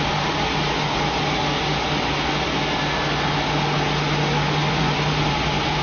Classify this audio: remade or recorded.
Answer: recorded